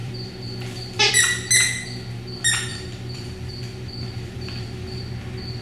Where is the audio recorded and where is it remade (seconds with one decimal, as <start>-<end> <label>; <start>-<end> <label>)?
0.0-1.1 remade; 1.1-2.7 recorded; 2.7-5.0 remade; 5.0-5.6 recorded